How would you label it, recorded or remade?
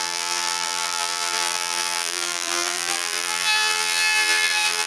remade